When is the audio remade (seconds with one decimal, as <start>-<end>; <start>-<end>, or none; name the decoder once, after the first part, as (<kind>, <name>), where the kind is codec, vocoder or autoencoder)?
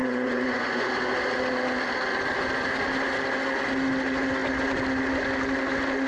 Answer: 0.0-0.9 (vocoder, Vocos)